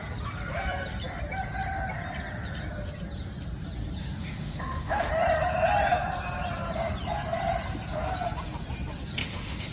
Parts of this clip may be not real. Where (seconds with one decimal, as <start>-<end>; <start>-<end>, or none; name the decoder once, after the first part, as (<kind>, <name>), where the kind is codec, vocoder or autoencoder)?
4.0-5.1 (autoencoder, DAC-VAE); 9.2-9.7